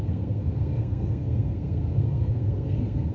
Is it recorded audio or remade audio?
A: remade